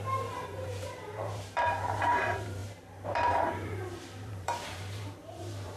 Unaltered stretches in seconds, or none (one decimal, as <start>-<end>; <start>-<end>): none